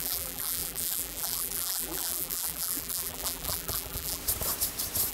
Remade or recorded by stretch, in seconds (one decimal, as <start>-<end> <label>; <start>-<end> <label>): 0.0-4.2 remade; 4.2-5.1 recorded